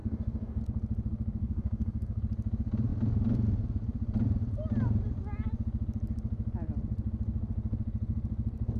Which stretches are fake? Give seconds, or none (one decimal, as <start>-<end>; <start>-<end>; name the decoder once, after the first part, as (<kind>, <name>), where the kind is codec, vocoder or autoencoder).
0.0-0.6 (codec, DAC); 1.4-2.2